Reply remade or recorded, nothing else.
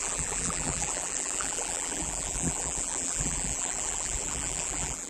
remade